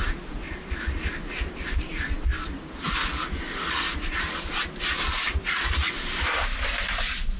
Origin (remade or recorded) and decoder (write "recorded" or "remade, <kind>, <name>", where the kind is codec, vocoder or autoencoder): recorded